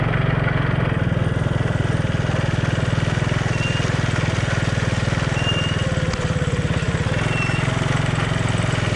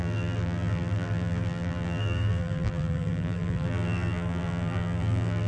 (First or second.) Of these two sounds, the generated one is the second